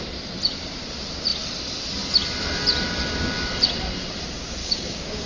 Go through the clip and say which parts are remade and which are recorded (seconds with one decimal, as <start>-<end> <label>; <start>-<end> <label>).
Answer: 0.0-4.6 recorded; 4.6-5.3 remade